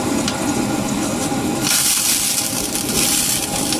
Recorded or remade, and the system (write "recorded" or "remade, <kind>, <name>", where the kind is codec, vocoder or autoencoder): recorded